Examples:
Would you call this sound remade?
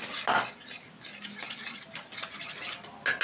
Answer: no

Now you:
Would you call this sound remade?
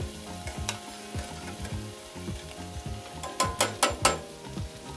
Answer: no